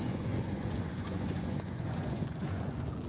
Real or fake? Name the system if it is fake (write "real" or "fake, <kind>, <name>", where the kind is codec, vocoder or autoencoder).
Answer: fake, vocoder, Vocos